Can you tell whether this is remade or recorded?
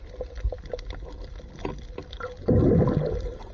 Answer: recorded